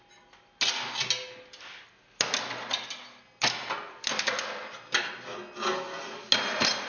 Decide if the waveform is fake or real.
real